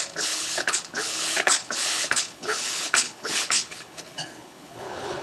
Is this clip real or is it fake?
fake